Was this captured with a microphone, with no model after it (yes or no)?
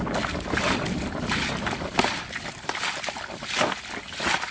yes